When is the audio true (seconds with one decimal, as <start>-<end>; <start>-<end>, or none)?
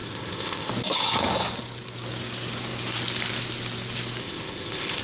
0.7-4.2